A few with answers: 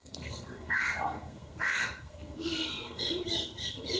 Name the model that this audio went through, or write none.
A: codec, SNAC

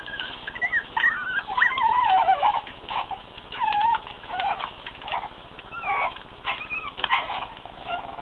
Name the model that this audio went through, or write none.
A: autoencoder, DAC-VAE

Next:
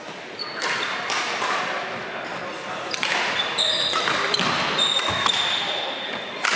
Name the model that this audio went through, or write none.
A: none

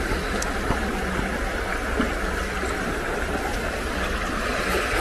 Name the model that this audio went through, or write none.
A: none